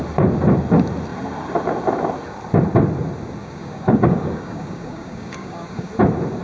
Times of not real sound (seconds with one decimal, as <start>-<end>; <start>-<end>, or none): 3.4-5.9